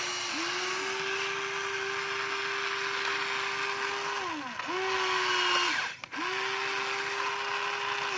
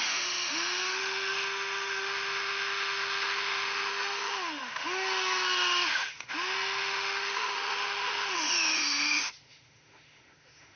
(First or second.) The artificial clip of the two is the second